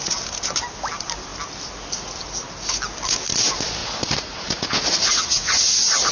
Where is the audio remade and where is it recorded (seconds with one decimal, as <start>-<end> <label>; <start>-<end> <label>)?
0.0-3.8 recorded; 3.8-6.1 remade

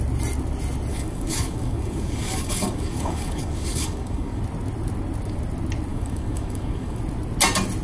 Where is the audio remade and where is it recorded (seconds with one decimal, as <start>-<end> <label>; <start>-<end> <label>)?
0.0-0.9 recorded; 0.9-4.4 remade; 4.4-5.9 recorded; 5.9-7.0 remade; 7.0-7.8 recorded

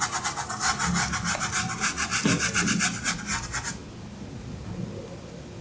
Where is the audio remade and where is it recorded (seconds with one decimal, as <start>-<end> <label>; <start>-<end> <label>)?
0.0-5.6 recorded

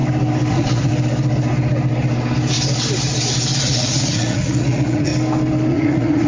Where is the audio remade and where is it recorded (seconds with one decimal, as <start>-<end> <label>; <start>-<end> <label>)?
0.0-0.5 recorded; 0.5-0.9 remade; 0.9-3.6 recorded; 3.6-5.1 remade; 5.1-5.7 recorded; 5.7-6.3 remade

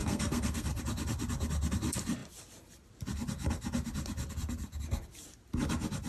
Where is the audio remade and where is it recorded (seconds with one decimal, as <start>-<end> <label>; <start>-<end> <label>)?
0.0-0.8 remade; 0.8-6.1 recorded